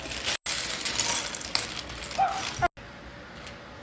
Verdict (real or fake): real